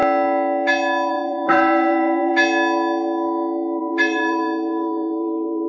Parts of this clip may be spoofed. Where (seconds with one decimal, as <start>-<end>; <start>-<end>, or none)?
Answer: 1.1-2.3; 3.8-5.7